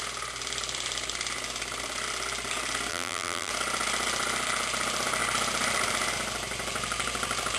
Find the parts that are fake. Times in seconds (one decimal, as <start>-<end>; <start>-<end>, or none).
2.9-3.5